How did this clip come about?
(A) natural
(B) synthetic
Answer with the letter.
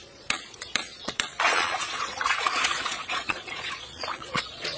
B